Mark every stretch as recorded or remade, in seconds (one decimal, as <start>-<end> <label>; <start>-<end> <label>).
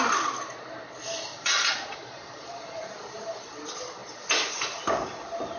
0.0-1.3 recorded; 1.3-2.9 remade; 2.9-5.6 recorded